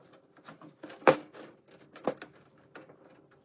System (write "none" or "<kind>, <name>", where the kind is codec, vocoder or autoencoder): none